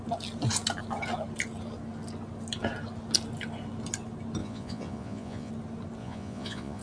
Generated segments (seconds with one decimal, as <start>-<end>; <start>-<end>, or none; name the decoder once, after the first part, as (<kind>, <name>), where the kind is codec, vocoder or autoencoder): 4.4-5.5 (vocoder, Vocos); 6.0-6.8